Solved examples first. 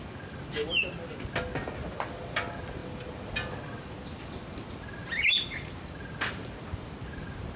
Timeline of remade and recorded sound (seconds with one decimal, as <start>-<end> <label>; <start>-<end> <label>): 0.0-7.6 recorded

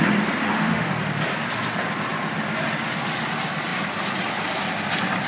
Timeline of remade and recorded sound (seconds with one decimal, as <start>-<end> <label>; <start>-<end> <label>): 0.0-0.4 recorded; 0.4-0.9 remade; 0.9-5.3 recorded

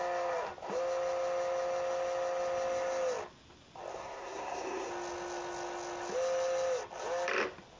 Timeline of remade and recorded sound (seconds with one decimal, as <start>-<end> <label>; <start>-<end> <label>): 0.0-3.9 recorded; 3.9-4.9 remade; 4.9-7.8 recorded

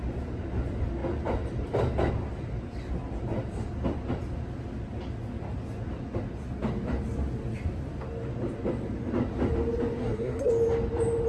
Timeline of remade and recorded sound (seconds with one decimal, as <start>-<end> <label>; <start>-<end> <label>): 0.0-10.0 recorded; 10.0-10.5 remade; 10.5-11.3 recorded

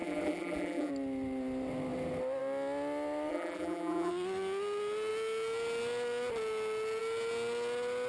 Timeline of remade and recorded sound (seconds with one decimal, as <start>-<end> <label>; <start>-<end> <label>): 0.0-0.9 remade; 0.9-3.3 recorded; 3.3-4.1 remade; 4.1-8.1 recorded

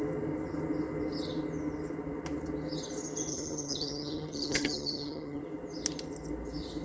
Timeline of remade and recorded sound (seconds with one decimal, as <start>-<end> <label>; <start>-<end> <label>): 0.0-3.3 recorded; 3.3-5.4 remade; 5.4-6.8 recorded

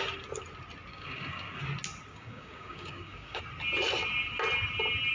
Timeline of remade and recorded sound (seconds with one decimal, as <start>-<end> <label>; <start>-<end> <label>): 0.0-0.9 recorded; 0.9-1.6 remade; 1.6-2.1 recorded; 2.1-3.4 remade; 3.4-5.1 recorded